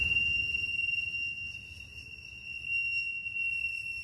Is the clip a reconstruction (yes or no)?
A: no